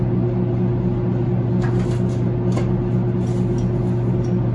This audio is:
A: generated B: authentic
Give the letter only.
B